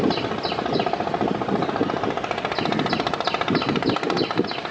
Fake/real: real